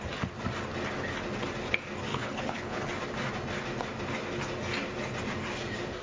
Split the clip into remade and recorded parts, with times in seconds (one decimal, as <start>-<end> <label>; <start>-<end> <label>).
0.0-2.1 recorded; 2.1-2.9 remade; 2.9-6.0 recorded